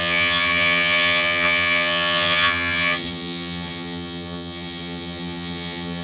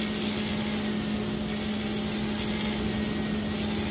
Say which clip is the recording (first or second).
second